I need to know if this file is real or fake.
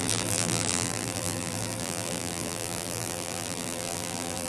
fake